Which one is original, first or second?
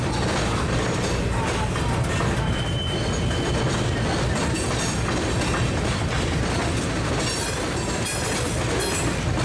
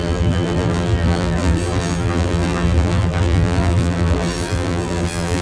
first